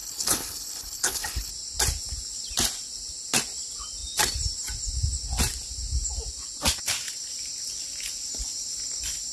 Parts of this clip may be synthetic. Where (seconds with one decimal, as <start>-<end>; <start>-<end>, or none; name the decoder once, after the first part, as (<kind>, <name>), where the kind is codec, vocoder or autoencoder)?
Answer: 0.0-1.5 (codec, HILCodec)